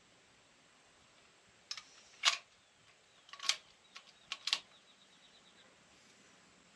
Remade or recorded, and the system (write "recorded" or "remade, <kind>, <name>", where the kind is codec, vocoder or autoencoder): recorded